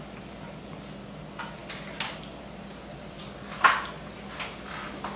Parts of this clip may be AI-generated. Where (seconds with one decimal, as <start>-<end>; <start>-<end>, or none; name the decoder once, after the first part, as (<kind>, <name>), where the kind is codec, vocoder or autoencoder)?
none